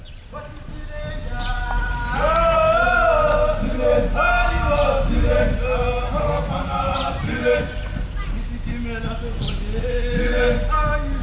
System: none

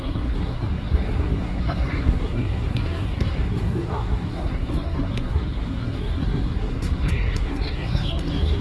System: codec, SNAC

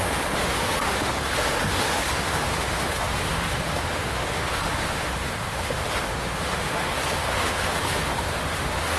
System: autoencoder, DAC-VAE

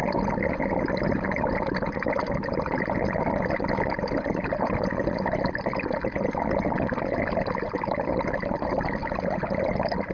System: none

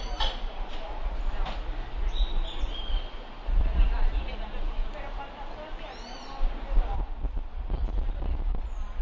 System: none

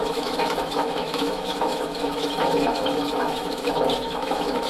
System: autoencoder, DAC-VAE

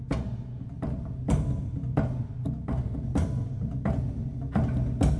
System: none